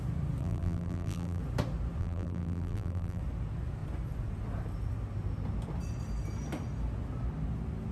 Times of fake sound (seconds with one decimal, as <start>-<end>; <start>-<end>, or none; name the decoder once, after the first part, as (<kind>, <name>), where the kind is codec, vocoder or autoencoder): 0.4-1.4 (vocoder, BigVGAN v2); 2.0-3.2